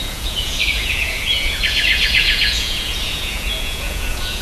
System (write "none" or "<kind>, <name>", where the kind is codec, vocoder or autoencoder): vocoder, Vocos